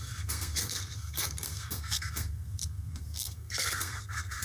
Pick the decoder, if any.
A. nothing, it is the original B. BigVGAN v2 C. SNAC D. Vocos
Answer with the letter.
C